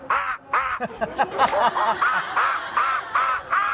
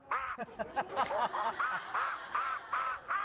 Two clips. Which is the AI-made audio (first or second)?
second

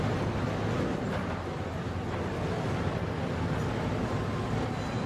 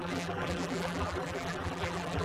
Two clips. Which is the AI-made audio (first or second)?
second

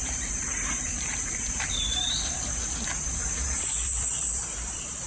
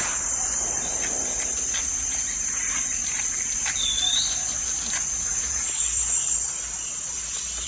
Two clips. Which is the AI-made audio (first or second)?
first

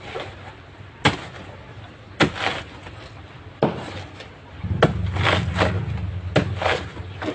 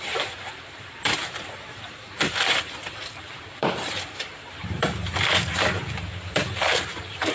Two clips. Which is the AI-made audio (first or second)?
second